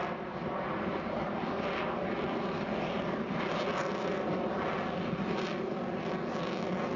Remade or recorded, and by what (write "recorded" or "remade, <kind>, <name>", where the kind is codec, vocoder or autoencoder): recorded